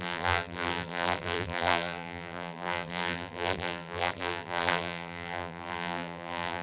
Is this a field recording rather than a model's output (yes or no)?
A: no